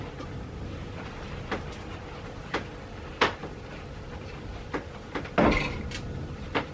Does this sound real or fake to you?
real